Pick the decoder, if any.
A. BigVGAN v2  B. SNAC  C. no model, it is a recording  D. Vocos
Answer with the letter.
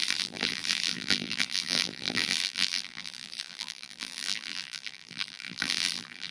A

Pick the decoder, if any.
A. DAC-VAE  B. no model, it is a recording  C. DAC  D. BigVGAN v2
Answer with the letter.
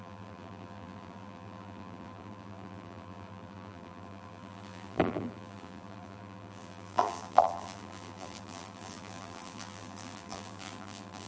D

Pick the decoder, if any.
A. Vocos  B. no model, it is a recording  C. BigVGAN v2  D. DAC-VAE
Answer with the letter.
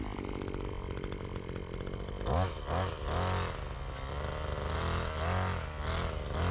B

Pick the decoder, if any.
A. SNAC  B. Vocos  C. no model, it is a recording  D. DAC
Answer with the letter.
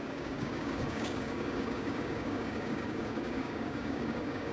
D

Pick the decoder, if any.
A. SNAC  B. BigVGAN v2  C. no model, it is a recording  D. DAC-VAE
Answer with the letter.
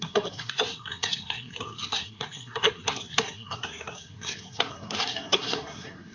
A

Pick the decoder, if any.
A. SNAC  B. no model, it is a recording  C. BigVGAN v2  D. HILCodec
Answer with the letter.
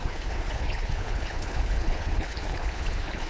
D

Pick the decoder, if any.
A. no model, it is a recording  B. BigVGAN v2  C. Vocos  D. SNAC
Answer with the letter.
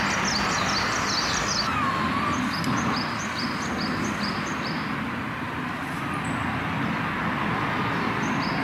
A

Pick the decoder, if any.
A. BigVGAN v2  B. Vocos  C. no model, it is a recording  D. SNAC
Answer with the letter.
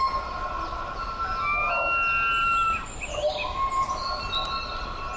C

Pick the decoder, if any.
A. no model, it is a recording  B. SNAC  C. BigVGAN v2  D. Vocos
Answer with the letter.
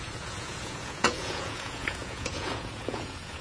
D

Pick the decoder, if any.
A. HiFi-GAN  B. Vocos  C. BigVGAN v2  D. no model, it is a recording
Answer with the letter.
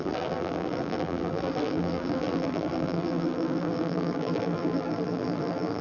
C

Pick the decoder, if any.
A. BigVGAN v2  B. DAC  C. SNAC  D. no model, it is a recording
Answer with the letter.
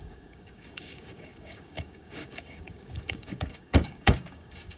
B